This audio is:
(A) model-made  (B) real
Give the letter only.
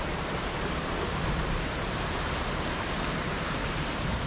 A